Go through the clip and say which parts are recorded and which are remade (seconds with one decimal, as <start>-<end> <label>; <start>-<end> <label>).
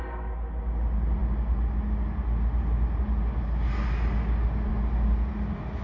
0.0-5.8 recorded